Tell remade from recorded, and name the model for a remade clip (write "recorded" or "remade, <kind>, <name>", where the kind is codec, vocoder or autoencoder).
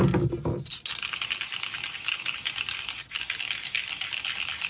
recorded